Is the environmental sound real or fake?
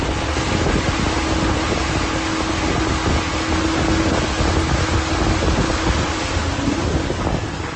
real